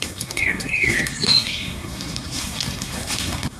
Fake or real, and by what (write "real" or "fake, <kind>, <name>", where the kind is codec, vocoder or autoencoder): fake, codec, SNAC